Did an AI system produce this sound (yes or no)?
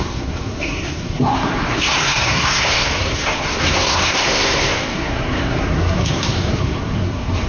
yes